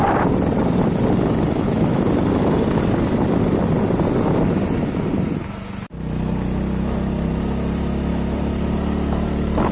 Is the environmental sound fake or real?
real